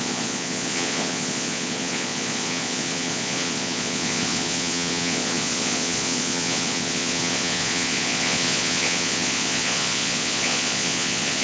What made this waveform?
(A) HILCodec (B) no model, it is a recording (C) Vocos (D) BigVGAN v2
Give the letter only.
C